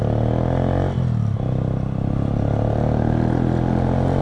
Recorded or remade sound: recorded